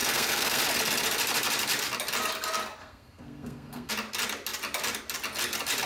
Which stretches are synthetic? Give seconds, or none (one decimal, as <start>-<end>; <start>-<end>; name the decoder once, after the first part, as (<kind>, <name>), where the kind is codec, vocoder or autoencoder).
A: 0.0-0.6 (codec, SNAC); 2.8-3.9